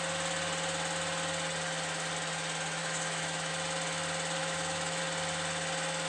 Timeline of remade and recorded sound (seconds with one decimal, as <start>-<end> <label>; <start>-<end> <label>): 0.0-2.8 recorded; 2.8-3.5 remade; 3.5-4.4 recorded; 4.4-5.0 remade; 5.0-6.1 recorded